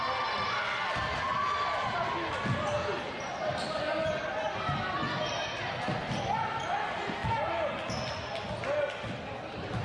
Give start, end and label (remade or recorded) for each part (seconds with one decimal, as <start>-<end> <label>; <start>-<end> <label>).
0.0-9.8 recorded